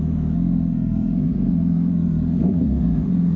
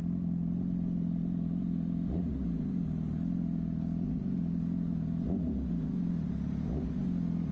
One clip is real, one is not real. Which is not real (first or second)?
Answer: first